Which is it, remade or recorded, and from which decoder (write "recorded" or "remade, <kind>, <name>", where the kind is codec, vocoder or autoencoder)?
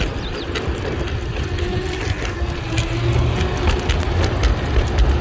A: recorded